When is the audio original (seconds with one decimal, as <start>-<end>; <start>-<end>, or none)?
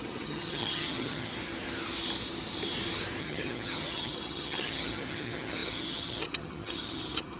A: 1.3-3.2